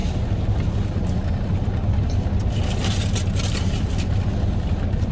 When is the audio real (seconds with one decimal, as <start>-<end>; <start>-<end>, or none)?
0.0-5.1